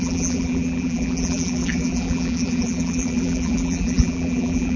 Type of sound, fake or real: fake